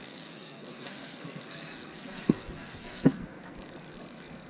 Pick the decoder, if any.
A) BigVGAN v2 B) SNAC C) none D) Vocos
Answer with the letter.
B